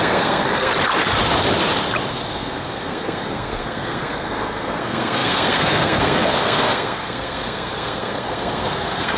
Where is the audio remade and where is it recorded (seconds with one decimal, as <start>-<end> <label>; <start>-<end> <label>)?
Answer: 0.0-0.7 remade; 0.7-2.1 recorded; 2.1-9.2 remade